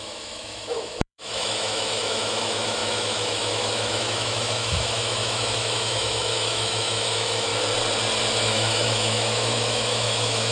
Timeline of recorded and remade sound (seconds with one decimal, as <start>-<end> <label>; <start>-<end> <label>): 0.0-7.5 remade; 7.5-8.4 recorded; 8.4-10.5 remade